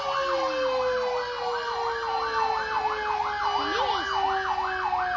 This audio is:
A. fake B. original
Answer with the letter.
B